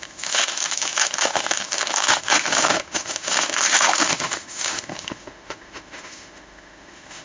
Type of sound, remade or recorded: remade